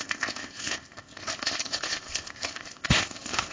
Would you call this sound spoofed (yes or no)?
yes